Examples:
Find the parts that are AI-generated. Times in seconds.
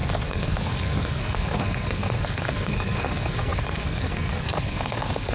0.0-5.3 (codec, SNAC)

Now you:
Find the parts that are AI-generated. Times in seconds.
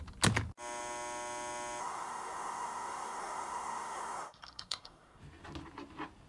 1.8-5.2 (codec, SNAC)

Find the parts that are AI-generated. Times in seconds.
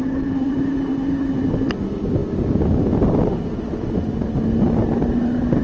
none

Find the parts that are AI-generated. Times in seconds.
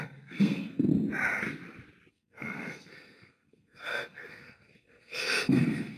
0.0-0.9 (codec, SNAC); 2.1-6.0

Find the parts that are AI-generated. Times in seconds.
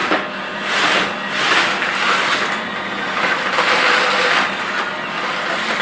none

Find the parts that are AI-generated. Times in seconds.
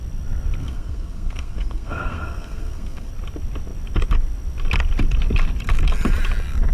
0.6-3.1 (codec, SNAC)